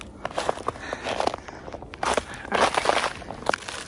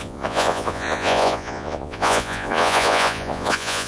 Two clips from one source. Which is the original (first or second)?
first